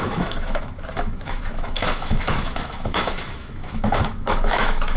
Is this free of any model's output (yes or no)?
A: no